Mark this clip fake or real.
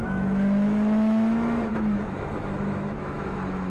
fake